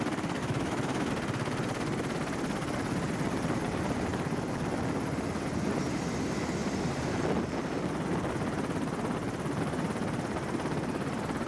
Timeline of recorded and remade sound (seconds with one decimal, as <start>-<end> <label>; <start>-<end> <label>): 0.0-0.4 recorded; 0.4-1.1 remade; 1.1-11.5 recorded